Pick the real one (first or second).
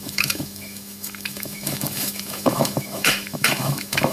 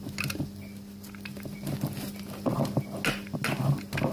second